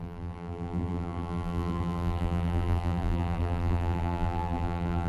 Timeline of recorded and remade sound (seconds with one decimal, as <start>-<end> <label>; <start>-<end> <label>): 0.0-5.1 remade